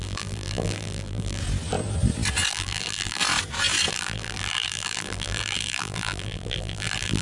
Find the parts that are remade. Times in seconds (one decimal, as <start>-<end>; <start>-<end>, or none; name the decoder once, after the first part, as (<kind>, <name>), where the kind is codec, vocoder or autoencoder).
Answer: 0.0-1.4 (vocoder, BigVGAN v2); 2.5-3.2; 3.9-7.2